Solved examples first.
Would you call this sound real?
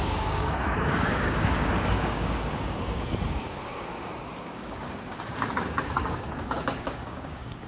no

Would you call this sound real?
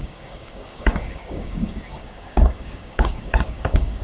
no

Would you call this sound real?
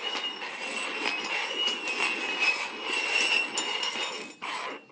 yes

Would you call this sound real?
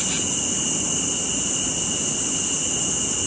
yes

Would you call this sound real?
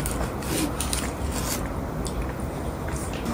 yes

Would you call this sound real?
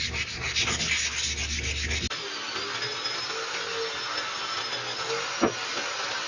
yes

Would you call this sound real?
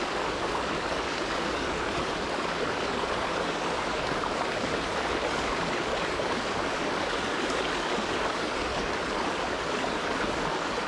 no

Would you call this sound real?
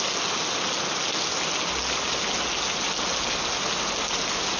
yes